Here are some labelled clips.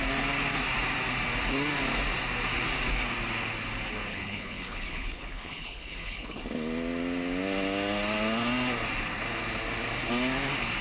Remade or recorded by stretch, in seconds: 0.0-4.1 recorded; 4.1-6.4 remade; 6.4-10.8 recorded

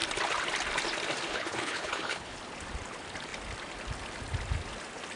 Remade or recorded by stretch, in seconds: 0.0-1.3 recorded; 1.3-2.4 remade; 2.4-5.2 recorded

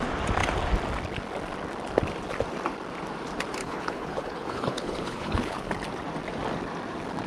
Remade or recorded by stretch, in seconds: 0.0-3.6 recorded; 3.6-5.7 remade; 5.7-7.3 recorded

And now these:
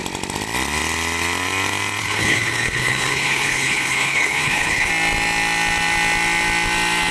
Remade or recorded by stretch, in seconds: 0.0-2.0 recorded; 2.0-4.9 remade; 4.9-7.1 recorded

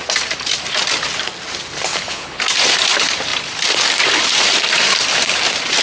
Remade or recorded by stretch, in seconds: 0.0-1.9 recorded; 1.9-2.4 remade; 2.4-5.8 recorded

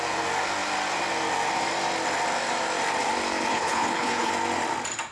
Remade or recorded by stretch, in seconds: 0.0-3.5 recorded; 3.5-4.3 remade; 4.3-5.1 recorded